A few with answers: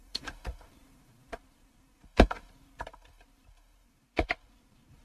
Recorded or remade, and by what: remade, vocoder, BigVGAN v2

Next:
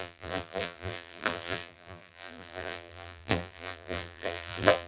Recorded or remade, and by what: remade, vocoder, BigVGAN v2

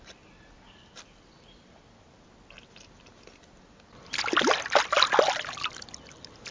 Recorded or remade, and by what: recorded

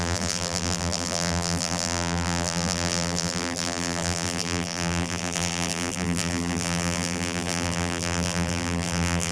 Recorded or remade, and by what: remade, vocoder, BigVGAN v2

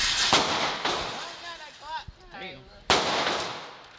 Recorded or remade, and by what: recorded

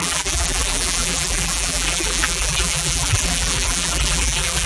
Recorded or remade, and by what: remade, vocoder, BigVGAN v2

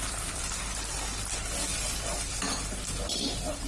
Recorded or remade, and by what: remade, vocoder, BigVGAN v2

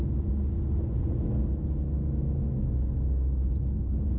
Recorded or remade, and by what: recorded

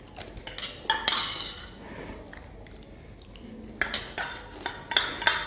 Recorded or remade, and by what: recorded